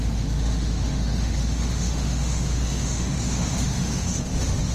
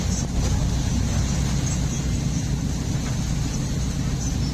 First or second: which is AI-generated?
first